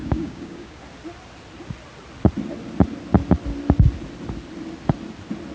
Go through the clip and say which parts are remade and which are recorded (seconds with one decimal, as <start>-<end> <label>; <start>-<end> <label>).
0.0-0.8 remade; 0.8-5.5 recorded